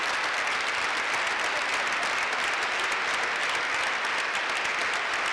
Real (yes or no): yes